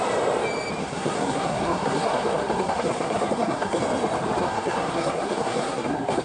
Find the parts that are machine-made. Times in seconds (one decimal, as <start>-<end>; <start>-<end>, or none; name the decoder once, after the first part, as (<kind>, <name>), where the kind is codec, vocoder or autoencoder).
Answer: 0.8-3.8 (codec, SNAC); 4.4-6.2